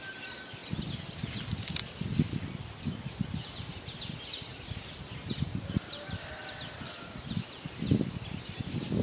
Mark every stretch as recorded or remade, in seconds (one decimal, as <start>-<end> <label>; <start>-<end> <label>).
0.0-9.0 recorded